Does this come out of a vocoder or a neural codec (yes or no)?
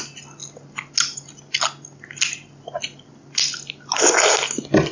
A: no